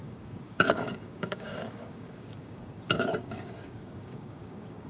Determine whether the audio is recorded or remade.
remade